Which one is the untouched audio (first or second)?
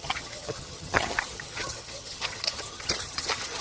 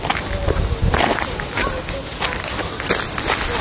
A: second